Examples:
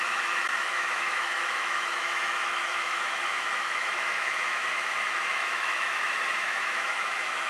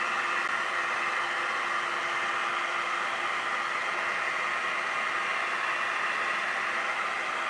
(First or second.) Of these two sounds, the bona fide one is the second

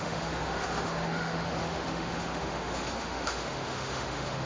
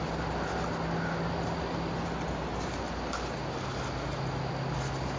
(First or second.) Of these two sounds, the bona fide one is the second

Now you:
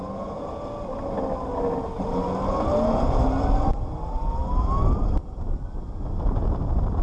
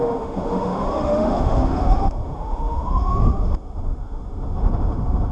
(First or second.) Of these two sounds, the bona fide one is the first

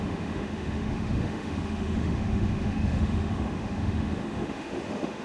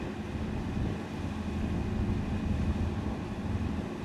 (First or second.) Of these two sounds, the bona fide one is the second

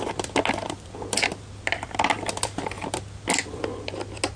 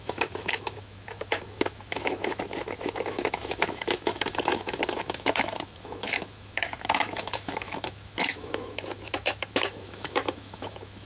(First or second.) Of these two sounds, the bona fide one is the first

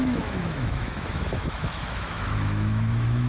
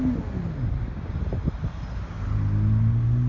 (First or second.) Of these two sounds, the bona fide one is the second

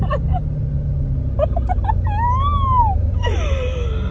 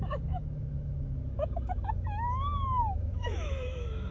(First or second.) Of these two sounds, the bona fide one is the first